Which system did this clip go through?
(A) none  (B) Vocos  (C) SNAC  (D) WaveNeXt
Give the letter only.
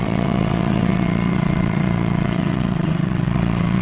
D